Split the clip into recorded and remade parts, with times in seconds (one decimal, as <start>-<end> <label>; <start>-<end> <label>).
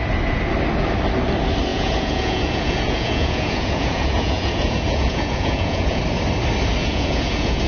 0.0-1.7 recorded; 1.7-6.0 remade; 6.0-6.8 recorded; 6.8-7.7 remade